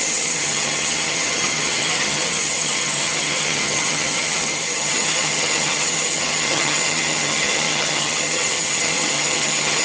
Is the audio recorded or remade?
remade